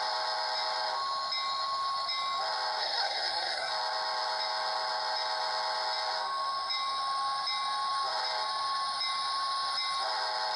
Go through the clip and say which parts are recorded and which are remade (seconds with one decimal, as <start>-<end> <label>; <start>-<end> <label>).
0.0-2.8 recorded; 2.8-3.7 remade; 3.7-10.6 recorded